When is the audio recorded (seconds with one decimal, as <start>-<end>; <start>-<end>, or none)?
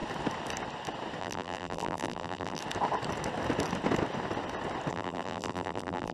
0.0-1.2; 2.6-4.9